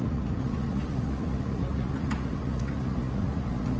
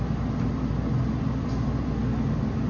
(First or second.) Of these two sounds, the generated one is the first